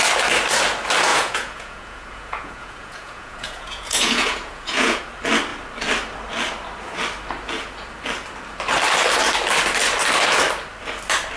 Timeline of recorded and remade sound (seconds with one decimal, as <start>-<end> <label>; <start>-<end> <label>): 0.0-1.1 recorded; 1.1-5.0 remade; 5.0-11.4 recorded